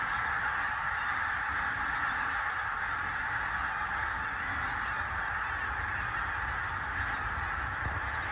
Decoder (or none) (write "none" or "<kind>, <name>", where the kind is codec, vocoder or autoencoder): none